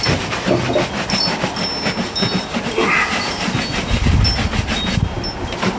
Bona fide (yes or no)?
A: yes